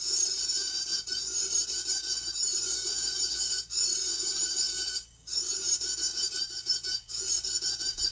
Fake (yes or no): yes